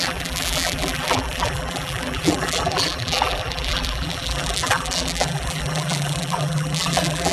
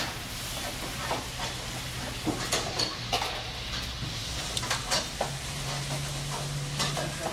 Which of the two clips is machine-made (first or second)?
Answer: first